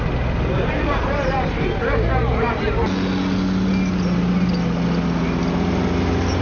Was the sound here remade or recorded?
recorded